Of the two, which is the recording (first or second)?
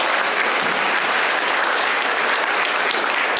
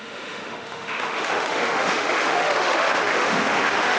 first